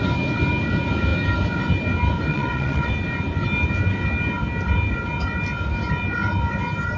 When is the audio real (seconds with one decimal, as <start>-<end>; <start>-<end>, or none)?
0.0-2.3; 2.9-7.0